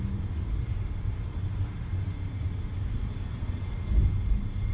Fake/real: real